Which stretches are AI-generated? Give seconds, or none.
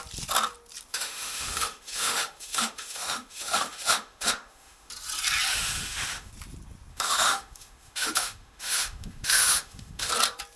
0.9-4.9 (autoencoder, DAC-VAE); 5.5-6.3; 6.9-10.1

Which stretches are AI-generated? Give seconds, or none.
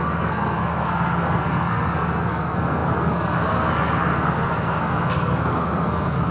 0.0-6.3 (codec, SNAC)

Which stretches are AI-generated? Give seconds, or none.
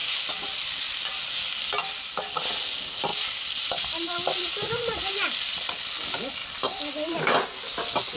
0.0-0.6 (vocoder, BigVGAN v2); 3.1-5.1; 6.4-7.2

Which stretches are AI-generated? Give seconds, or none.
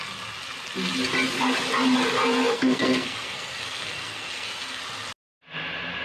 2.2-4.8 (codec, SNAC)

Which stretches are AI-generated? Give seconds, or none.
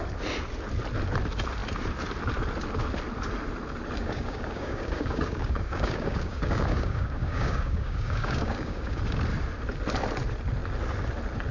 4.0-9.0 (codec, DAC)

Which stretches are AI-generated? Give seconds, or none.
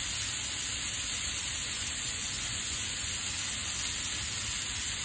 1.6-3.1 (vocoder, Vocos)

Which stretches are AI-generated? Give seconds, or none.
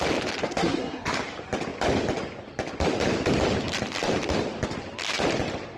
0.4-1.1 (codec, SNAC)